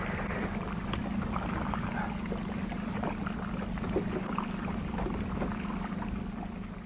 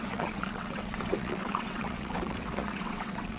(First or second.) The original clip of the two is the first